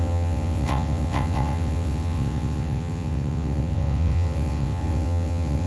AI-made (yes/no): yes